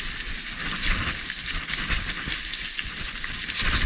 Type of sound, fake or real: real